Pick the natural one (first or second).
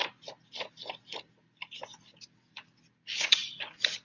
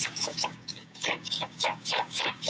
first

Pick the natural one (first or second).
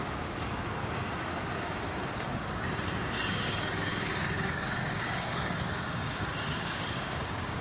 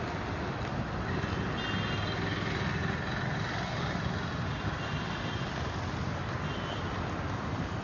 second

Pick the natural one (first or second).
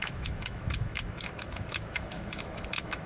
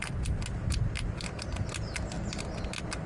second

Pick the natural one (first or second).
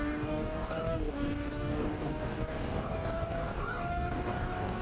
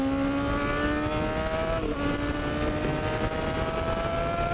second